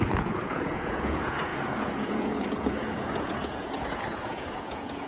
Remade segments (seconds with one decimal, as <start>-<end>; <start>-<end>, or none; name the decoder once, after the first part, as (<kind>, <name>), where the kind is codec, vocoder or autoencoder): 0.0-5.1 (vocoder, Vocos)